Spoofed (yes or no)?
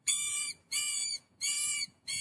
yes